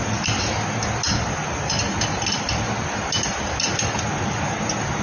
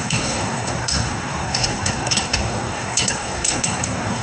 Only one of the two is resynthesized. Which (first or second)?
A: second